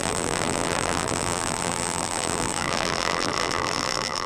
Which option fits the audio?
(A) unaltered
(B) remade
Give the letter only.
B